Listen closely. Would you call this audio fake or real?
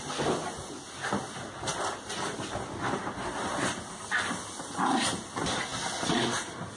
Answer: real